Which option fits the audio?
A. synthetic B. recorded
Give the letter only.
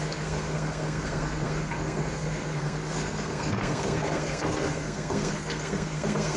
A